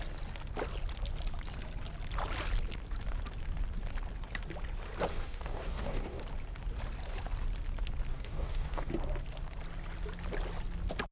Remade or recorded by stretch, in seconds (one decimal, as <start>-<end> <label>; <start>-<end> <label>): 0.0-5.1 recorded; 5.1-6.2 remade; 6.2-8.1 recorded; 8.1-8.9 remade; 8.9-11.1 recorded